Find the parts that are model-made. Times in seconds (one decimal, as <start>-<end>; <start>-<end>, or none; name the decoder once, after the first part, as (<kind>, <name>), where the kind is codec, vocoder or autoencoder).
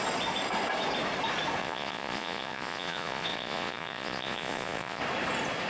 1.6-5.0 (vocoder, Vocos)